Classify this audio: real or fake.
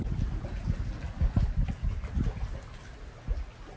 real